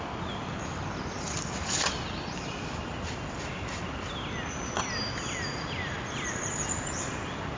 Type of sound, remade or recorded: recorded